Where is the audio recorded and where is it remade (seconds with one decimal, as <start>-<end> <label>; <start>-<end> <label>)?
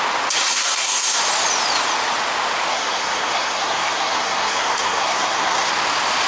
0.0-0.4 recorded; 0.4-1.2 remade; 1.2-2.7 recorded; 2.7-5.7 remade; 5.7-6.3 recorded